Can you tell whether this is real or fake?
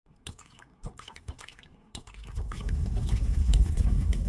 fake